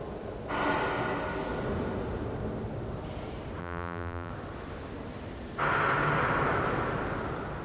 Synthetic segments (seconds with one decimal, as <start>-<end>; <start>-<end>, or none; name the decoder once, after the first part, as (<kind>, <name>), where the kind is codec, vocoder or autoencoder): 3.6-4.3 (vocoder, BigVGAN v2)